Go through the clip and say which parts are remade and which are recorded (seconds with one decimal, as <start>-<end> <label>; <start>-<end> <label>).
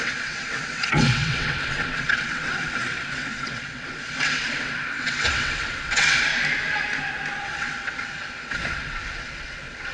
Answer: 0.0-6.3 remade; 6.3-7.4 recorded; 7.4-9.9 remade